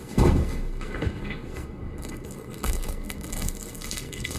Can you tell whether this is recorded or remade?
remade